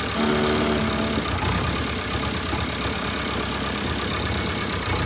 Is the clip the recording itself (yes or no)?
yes